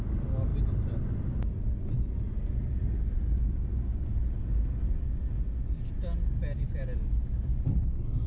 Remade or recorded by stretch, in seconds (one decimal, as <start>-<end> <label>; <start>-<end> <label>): 0.0-8.3 recorded